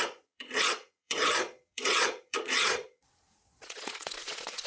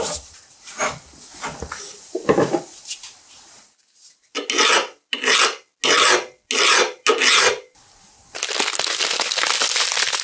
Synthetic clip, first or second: first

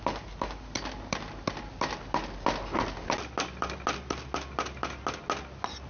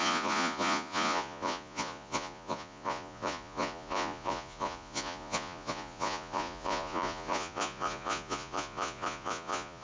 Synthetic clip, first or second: second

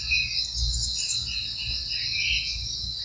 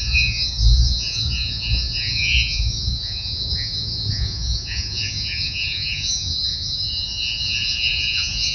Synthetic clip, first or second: second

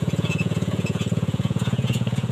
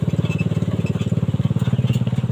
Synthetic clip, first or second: first